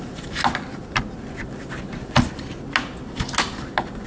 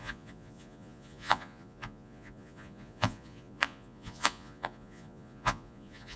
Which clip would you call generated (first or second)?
second